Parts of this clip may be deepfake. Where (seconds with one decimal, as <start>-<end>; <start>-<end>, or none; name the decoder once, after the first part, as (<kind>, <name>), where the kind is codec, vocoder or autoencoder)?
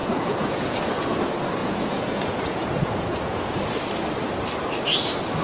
0.0-0.8 (vocoder, Vocos); 1.6-3.7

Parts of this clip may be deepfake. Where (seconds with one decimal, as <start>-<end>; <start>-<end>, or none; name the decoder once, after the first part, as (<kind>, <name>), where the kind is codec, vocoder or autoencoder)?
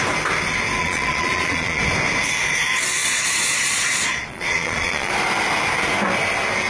0.8-1.8 (vocoder, Vocos); 3.0-5.1